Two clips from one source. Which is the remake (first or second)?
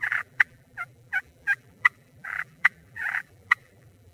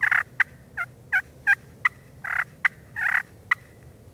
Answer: first